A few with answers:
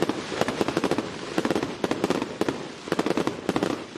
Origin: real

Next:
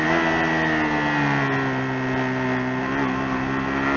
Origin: real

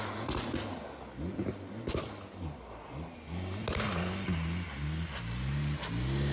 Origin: real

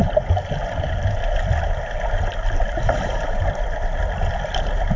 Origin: real